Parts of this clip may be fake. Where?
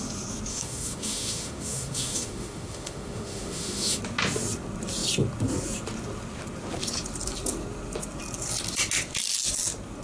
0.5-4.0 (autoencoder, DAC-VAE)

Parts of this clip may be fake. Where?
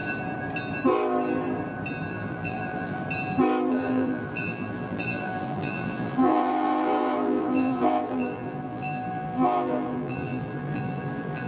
2.1-3.0 (vocoder, BigVGAN v2); 3.7-11.5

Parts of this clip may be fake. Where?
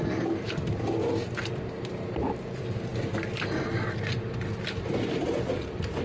none